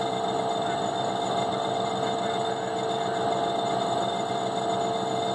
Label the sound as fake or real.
real